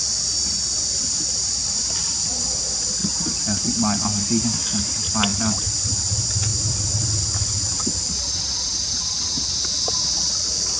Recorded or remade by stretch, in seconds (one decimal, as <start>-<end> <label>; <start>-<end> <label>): 0.0-3.0 recorded; 3.0-3.6 remade; 3.6-5.3 recorded; 5.3-6.0 remade; 6.0-10.8 recorded